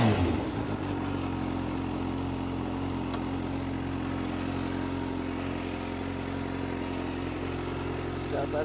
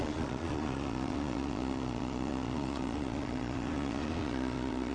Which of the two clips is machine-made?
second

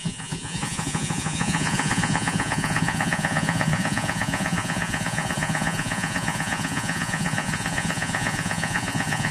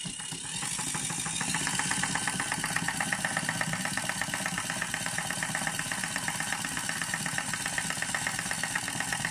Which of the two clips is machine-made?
first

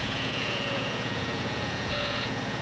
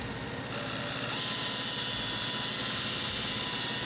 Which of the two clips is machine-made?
first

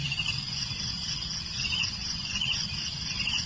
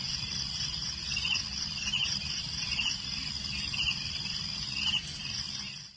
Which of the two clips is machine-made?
first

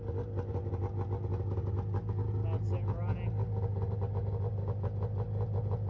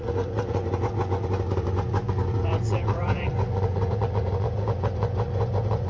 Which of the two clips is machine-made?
second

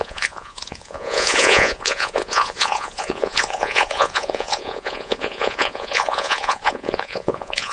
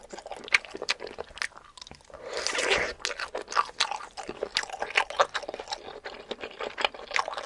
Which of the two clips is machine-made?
first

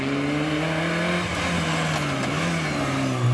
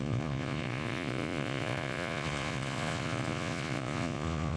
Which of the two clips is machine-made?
second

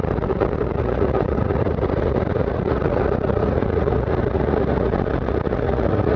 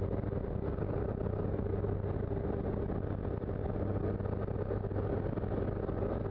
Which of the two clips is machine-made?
first